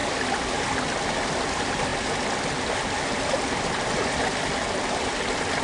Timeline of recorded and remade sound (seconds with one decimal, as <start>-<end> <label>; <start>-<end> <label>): 0.0-5.6 recorded